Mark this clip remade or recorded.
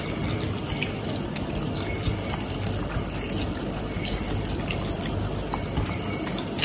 recorded